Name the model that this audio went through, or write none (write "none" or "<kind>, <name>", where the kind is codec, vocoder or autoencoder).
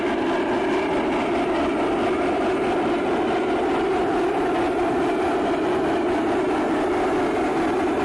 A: none